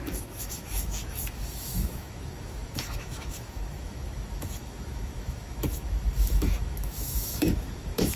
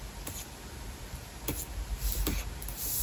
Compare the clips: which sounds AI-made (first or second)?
first